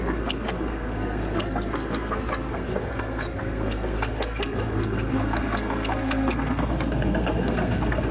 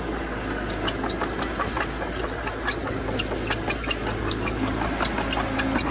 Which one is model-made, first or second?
first